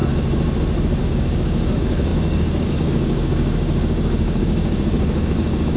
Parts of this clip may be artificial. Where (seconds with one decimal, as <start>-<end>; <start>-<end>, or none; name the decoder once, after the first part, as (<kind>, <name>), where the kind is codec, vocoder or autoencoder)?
1.0-5.8 (codec, DAC)